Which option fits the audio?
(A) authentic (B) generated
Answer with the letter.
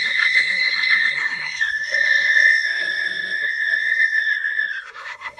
B